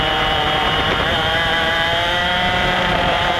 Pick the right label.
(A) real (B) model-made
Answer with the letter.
B